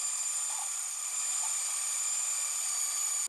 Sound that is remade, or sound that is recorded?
recorded